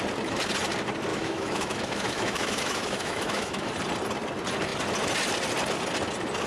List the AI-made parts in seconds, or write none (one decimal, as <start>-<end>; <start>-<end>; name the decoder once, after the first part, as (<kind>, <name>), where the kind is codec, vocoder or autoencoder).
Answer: 1.1-3.7 (autoencoder, DAC-VAE)